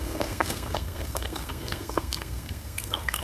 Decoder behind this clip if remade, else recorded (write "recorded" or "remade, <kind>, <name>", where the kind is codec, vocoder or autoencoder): remade, codec, SNAC